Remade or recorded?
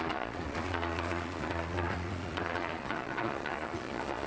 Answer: remade